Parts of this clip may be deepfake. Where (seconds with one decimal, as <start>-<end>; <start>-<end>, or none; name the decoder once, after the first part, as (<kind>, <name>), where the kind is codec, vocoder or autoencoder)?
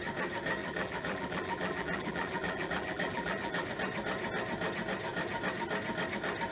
0.6-3.7 (vocoder, BigVGAN v2)